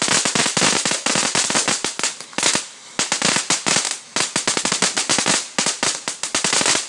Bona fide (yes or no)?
yes